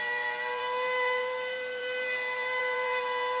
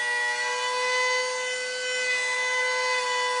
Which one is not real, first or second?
first